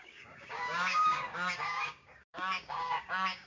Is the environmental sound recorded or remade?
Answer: remade